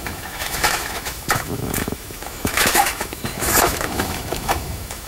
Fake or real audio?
fake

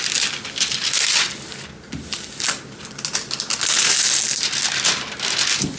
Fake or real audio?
real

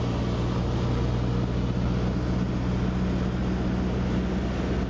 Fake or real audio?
real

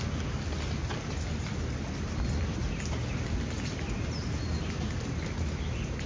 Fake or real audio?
real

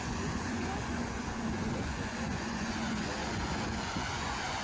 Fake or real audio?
fake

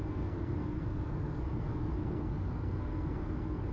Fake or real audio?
fake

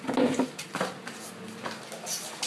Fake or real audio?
real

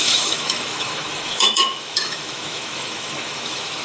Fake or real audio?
fake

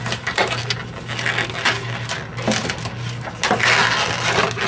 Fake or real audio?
real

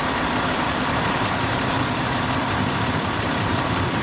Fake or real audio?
fake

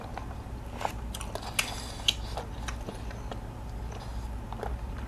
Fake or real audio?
real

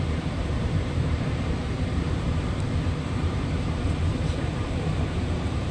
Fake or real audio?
fake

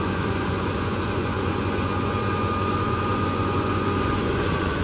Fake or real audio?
fake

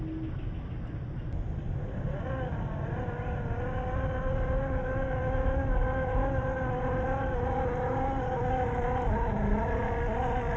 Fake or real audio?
real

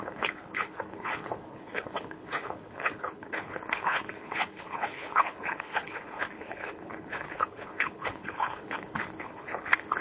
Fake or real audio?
fake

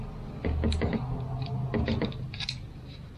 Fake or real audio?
real